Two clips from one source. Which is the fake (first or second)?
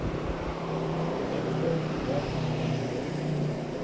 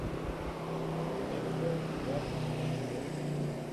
first